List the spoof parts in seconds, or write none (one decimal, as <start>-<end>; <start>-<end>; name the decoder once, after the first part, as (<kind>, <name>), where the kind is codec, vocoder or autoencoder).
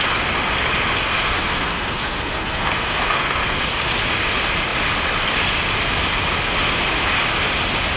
1.1-3.7 (codec, SNAC)